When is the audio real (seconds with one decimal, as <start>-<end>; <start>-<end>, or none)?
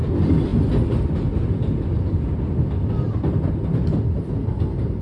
0.0-5.0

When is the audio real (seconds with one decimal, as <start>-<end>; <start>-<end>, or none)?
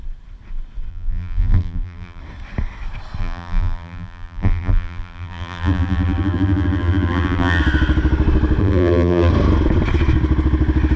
0.0-0.9; 2.2-3.2; 7.6-8.6; 9.3-11.0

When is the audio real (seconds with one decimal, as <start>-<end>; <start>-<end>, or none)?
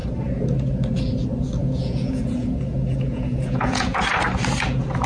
0.0-1.6; 4.0-5.1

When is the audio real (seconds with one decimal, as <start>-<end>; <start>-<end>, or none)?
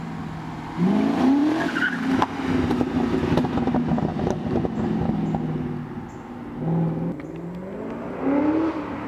0.0-1.4; 2.1-4.1; 5.0-9.1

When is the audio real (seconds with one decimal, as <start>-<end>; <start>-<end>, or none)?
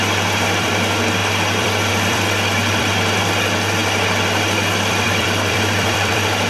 none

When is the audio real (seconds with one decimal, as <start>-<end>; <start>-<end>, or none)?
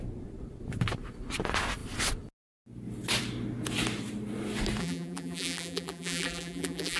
0.0-4.8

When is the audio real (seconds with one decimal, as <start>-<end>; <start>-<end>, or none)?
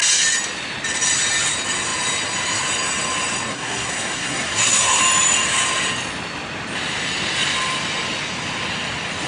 0.0-3.5; 5.0-9.3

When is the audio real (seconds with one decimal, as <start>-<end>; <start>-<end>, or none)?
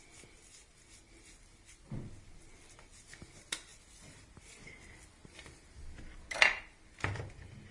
0.0-3.7; 4.6-7.7